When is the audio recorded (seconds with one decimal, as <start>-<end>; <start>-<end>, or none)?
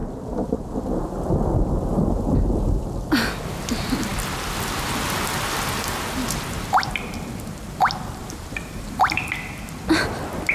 0.0-8.2; 9.2-10.5